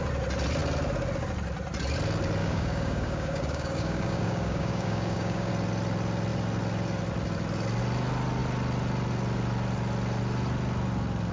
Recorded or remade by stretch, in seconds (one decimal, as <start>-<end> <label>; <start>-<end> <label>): 0.0-2.4 recorded; 2.4-5.5 remade; 5.5-11.3 recorded